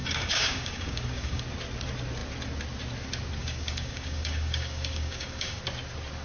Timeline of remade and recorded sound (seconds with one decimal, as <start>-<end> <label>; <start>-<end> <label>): 0.0-1.4 remade; 1.4-3.4 recorded; 3.4-5.6 remade; 5.6-6.2 recorded